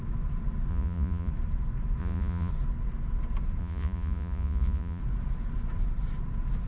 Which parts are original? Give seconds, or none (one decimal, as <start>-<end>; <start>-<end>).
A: 0.0-0.7; 1.3-2.0; 2.5-3.6; 5.0-6.7